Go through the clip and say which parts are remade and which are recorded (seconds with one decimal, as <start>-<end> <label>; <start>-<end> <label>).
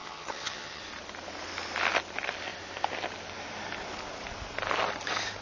0.0-0.8 remade; 0.8-5.4 recorded